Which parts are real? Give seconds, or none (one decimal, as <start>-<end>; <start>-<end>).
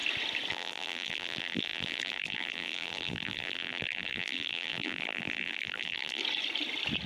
0.0-0.5; 6.2-7.1